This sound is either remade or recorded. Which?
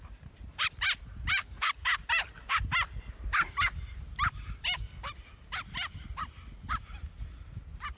recorded